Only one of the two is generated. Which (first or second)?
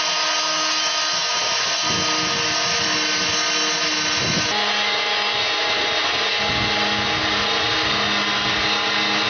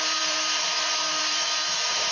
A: second